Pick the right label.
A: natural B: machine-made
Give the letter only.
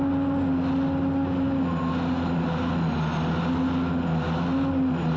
A